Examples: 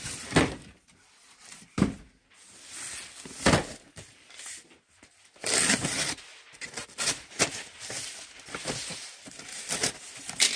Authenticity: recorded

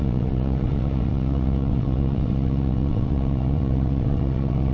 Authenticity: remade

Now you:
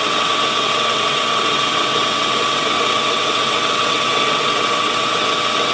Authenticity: remade